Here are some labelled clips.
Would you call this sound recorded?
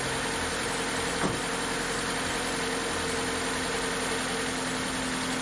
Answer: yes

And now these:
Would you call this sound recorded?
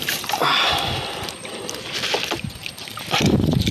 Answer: yes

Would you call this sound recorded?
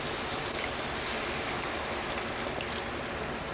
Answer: yes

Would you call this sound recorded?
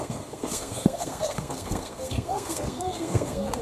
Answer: no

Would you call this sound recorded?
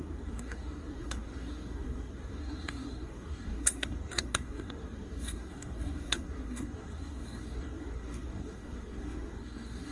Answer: no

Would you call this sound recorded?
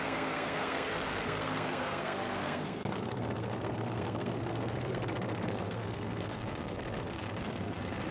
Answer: no